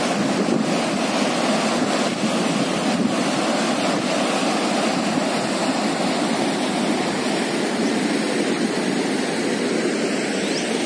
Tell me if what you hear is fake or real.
real